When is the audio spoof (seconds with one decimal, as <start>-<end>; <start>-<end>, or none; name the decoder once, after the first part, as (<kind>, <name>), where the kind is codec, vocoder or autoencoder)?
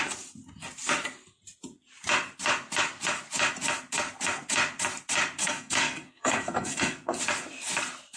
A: 5.4-7.2 (codec, SNAC)